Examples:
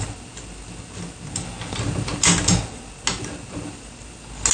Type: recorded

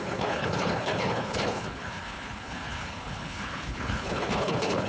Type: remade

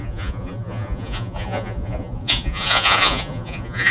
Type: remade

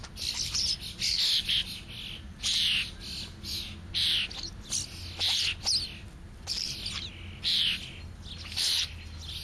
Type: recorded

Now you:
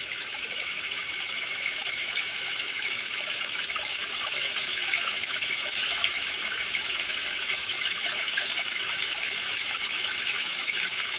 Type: remade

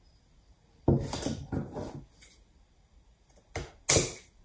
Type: recorded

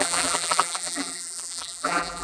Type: remade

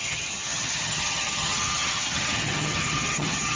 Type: remade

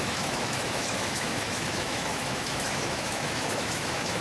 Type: remade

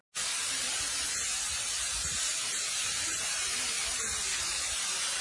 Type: recorded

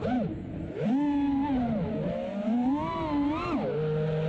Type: recorded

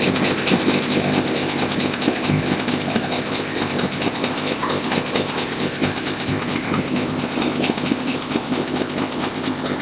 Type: remade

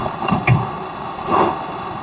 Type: remade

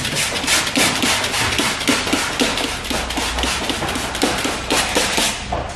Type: recorded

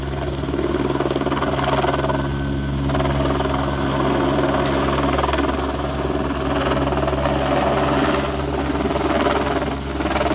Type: recorded